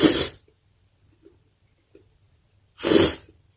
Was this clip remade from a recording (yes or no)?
yes